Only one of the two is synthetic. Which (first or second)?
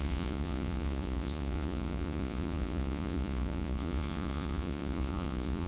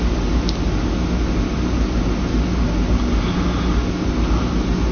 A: first